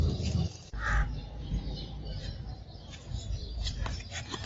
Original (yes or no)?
no